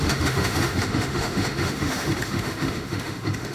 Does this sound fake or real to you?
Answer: fake